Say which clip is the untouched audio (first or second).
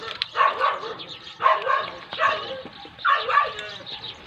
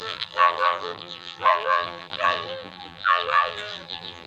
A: first